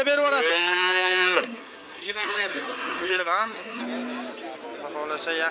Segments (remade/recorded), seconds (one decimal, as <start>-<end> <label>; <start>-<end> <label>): 0.0-0.5 recorded; 0.5-3.8 remade; 3.8-5.5 recorded

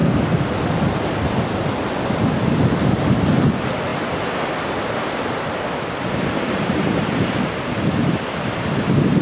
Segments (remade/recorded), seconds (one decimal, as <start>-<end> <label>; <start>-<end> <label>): 0.0-0.6 recorded; 0.6-9.2 remade

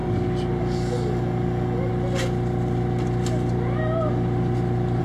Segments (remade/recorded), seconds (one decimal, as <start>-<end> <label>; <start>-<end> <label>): 0.0-0.6 recorded; 0.6-1.9 remade; 1.9-5.0 recorded

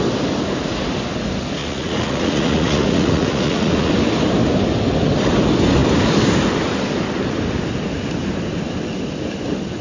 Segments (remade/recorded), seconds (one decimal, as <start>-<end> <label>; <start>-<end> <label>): 0.0-1.6 recorded; 1.6-3.9 remade; 3.9-9.8 recorded

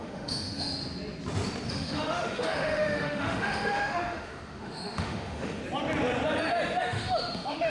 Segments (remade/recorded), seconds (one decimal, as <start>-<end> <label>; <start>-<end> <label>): 0.0-0.7 remade; 0.7-1.7 recorded; 1.7-5.6 remade; 5.6-6.8 recorded; 6.8-7.7 remade

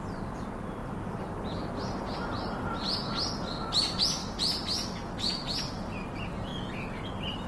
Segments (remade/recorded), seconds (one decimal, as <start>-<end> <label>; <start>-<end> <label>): 0.0-7.5 recorded

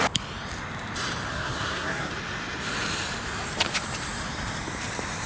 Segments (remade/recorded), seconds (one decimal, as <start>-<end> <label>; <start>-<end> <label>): 0.0-1.3 recorded; 1.3-2.1 remade; 2.1-5.3 recorded